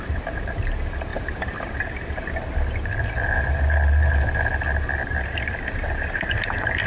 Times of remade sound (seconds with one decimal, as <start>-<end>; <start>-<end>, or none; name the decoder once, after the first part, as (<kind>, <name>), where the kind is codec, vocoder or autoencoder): 1.1-1.8 (vocoder, BigVGAN v2)